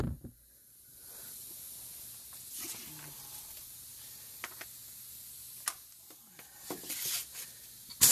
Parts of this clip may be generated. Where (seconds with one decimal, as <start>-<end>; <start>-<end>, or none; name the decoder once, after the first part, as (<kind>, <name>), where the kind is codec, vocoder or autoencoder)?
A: none